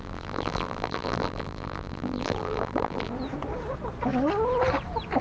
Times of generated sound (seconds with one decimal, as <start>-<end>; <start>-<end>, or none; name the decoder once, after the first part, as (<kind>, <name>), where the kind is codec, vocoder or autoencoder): 0.0-3.1 (vocoder, BigVGAN v2)